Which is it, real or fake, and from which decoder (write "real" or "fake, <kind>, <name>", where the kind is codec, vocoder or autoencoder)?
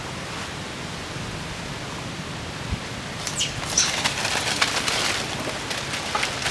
real